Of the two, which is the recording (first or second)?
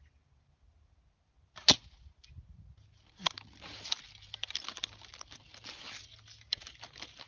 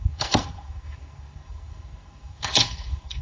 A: first